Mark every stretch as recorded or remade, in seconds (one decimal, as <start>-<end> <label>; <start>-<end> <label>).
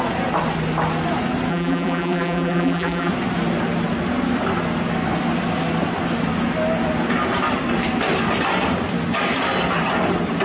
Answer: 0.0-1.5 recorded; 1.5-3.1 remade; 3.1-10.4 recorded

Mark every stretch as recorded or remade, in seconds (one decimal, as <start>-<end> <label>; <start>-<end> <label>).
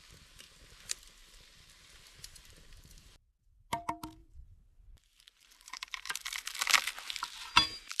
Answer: 0.0-1.2 recorded; 1.2-3.3 remade; 3.3-4.2 recorded; 4.2-6.1 remade; 6.1-8.0 recorded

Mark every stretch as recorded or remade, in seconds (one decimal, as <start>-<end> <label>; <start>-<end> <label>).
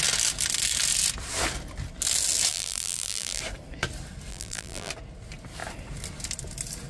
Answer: 0.0-2.5 recorded; 2.5-3.4 remade; 3.4-4.3 recorded; 4.3-4.9 remade; 4.9-6.9 recorded